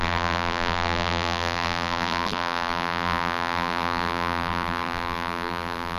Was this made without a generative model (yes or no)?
no